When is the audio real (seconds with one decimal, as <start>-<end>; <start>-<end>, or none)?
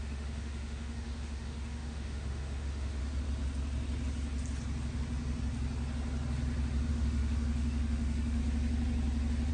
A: 3.0-6.9; 8.4-9.5